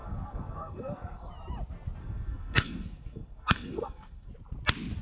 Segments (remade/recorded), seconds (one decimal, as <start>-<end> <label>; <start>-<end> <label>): 0.0-1.3 remade; 1.3-2.0 recorded; 2.0-4.3 remade; 4.3-5.0 recorded